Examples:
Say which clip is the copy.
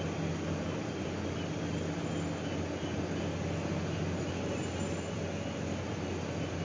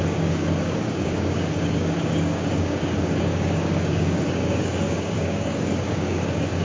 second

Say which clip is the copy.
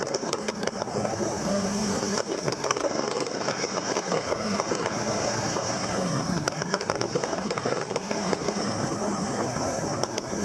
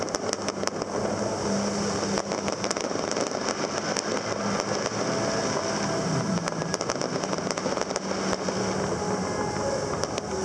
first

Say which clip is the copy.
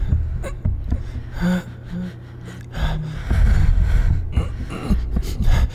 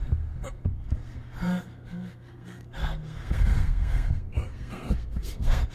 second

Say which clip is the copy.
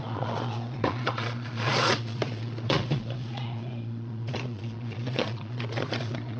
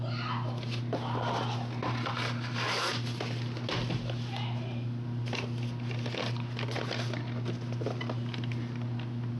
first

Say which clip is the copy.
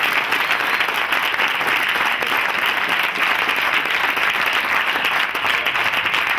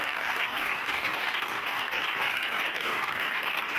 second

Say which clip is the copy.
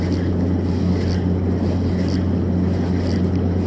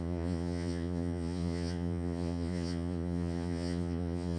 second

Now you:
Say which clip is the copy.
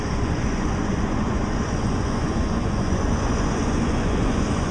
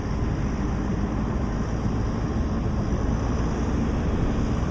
first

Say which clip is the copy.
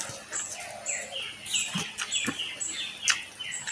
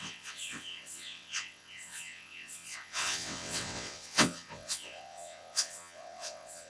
second